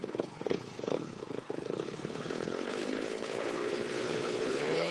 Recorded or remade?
remade